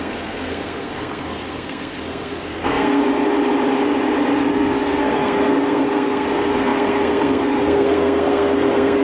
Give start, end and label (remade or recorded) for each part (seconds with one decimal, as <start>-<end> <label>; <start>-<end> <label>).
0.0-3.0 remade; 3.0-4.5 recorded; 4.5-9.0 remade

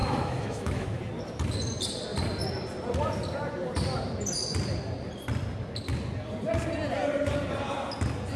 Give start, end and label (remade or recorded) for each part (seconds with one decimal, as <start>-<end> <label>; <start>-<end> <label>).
0.0-1.0 remade; 1.0-8.4 recorded

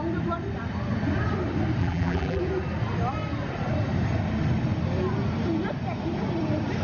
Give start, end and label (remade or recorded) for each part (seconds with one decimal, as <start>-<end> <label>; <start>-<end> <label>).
0.0-1.8 recorded; 1.8-2.4 remade; 2.4-6.8 recorded

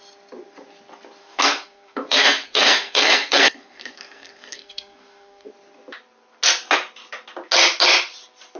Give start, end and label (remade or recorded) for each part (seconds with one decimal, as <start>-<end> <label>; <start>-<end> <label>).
0.0-1.2 recorded; 1.2-5.5 remade; 5.5-8.6 recorded

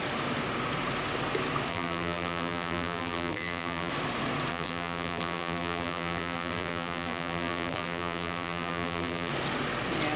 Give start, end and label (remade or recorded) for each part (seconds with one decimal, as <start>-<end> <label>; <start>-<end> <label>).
0.0-1.7 recorded; 1.7-3.9 remade; 3.9-4.5 recorded; 4.5-9.3 remade; 9.3-10.2 recorded

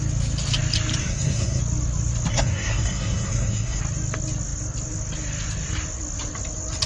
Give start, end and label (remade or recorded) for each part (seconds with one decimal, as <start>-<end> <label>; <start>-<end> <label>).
0.0-1.0 recorded; 1.0-1.6 remade; 1.6-2.3 recorded; 2.3-3.8 remade; 3.8-6.9 recorded

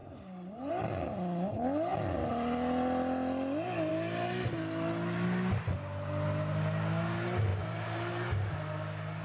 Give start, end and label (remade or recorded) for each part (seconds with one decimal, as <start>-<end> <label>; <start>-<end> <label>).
0.0-0.7 remade; 0.7-7.5 recorded; 7.5-8.5 remade; 8.5-9.2 recorded